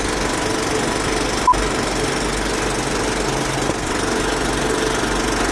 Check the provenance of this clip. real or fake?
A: real